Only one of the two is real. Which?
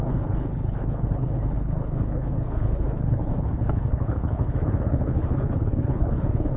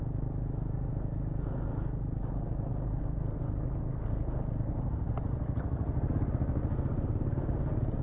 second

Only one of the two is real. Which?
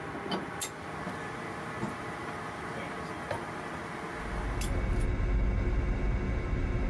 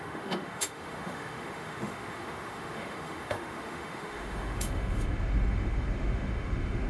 first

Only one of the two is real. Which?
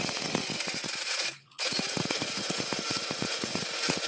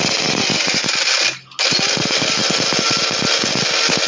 second